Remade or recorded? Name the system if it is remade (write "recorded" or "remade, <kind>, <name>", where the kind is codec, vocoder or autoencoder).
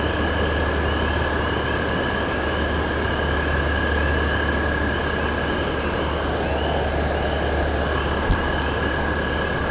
recorded